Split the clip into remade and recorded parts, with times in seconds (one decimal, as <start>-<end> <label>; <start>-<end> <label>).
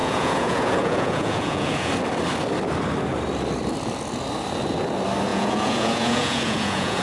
0.0-1.9 remade; 1.9-5.3 recorded; 5.3-7.0 remade